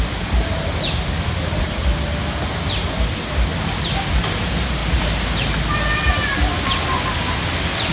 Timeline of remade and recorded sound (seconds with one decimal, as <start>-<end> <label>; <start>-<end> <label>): 0.0-7.9 recorded